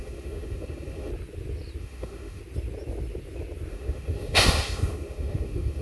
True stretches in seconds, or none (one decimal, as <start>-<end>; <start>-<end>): 1.1-1.8; 2.4-3.7